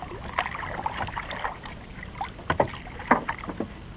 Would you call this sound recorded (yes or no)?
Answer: yes